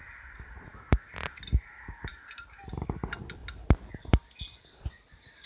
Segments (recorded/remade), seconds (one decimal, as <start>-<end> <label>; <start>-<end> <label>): 0.0-5.5 recorded